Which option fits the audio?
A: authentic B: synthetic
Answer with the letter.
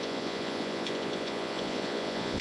B